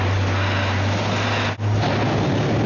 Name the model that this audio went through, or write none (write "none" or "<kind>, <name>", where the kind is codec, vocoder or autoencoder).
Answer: none